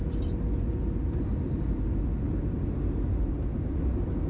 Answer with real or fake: real